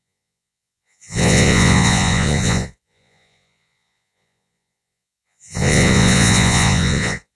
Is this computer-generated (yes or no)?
yes